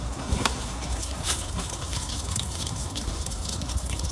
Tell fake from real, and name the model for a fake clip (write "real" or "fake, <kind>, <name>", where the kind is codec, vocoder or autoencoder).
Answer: fake, codec, SNAC